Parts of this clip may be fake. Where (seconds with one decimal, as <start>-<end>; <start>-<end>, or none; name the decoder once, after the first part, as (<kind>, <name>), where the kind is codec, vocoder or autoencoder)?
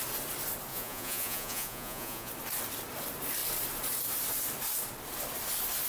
0.7-2.3 (vocoder, Vocos)